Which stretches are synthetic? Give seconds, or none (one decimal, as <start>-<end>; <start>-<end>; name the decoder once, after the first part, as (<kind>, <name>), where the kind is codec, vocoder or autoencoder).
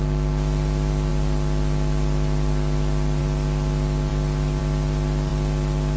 none